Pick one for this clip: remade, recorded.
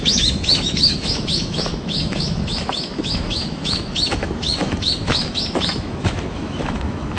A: remade